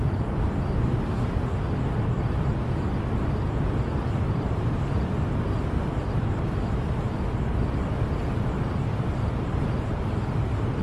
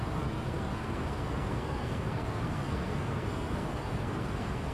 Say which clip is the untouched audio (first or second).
first